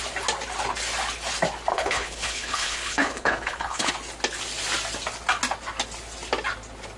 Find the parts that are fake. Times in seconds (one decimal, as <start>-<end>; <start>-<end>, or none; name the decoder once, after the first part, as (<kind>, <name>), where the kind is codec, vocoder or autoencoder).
1.7-3.9 (codec, HILCodec)